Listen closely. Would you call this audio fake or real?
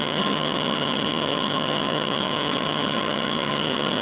fake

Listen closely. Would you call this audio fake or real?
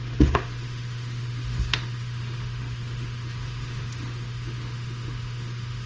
fake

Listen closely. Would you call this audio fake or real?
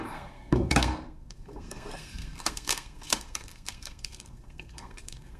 fake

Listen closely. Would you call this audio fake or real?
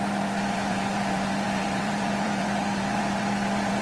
fake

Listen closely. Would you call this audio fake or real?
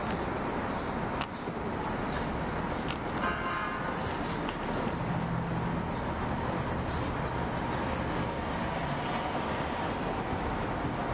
real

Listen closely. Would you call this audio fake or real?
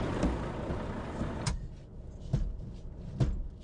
real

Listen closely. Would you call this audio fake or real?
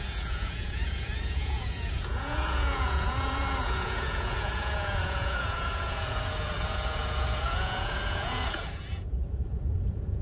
fake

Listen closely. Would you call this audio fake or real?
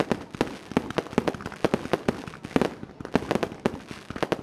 real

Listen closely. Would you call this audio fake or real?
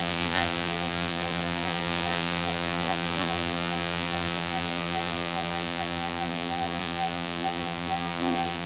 fake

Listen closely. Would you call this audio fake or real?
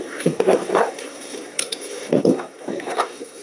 fake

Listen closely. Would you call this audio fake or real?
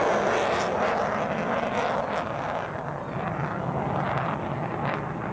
real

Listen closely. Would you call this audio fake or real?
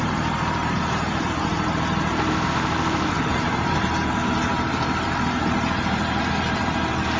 fake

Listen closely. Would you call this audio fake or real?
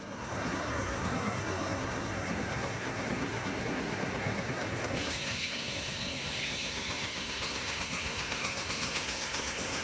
fake